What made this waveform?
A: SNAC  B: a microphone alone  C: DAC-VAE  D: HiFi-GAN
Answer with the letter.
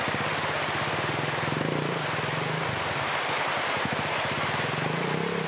B